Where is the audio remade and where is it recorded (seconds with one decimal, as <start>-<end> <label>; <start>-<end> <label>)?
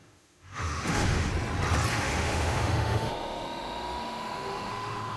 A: 0.0-1.3 remade; 1.3-1.9 recorded; 1.9-5.2 remade